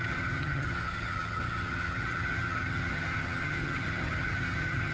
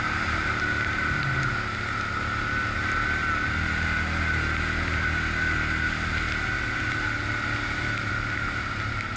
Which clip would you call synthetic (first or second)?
first